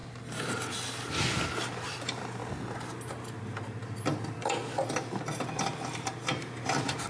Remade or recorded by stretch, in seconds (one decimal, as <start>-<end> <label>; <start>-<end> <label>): 0.0-1.6 recorded; 1.6-2.4 remade; 2.4-5.9 recorded; 5.9-7.1 remade